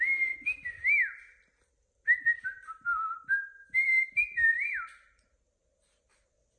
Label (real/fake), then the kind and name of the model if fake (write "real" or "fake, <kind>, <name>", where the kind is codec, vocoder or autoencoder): real